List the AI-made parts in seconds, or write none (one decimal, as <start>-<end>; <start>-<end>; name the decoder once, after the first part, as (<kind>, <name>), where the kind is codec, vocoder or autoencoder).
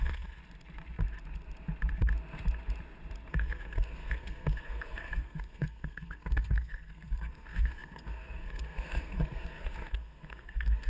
0.0-0.4 (codec, SNAC); 3.3-10.9